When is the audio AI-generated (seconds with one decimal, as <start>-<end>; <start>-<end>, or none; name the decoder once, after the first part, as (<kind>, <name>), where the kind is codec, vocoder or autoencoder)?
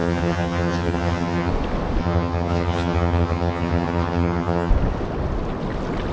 0.0-1.5 (vocoder, HiFi-GAN); 2.0-4.7